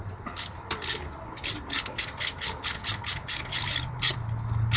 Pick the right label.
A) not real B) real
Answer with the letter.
B